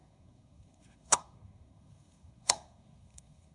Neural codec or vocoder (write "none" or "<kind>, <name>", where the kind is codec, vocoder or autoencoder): codec, SNAC